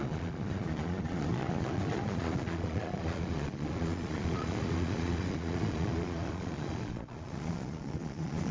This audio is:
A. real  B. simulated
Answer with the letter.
B